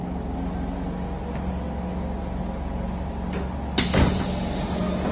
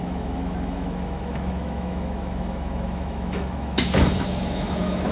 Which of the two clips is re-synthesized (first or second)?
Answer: second